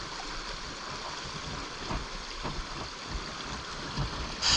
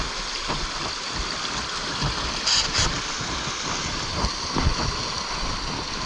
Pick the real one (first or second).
first